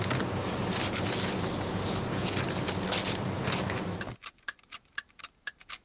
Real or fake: real